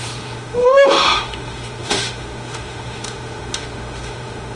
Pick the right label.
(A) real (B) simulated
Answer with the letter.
B